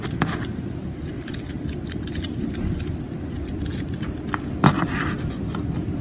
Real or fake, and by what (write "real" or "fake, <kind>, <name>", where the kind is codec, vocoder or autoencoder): fake, vocoder, BigVGAN v2